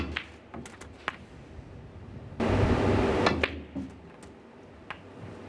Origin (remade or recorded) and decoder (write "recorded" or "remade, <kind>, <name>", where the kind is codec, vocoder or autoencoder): recorded